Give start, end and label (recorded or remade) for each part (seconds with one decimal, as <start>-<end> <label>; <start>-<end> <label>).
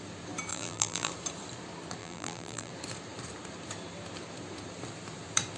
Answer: 0.0-0.5 recorded; 0.5-1.1 remade; 1.1-2.0 recorded; 2.0-2.7 remade; 2.7-5.6 recorded